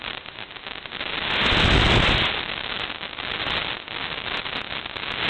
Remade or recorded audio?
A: recorded